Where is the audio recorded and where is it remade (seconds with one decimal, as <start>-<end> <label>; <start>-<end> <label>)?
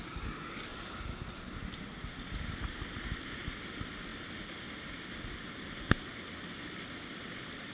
0.0-7.7 recorded